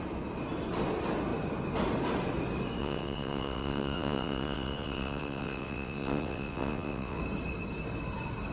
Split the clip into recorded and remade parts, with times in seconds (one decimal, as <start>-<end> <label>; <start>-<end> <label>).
0.0-2.8 recorded; 2.8-7.2 remade; 7.2-8.5 recorded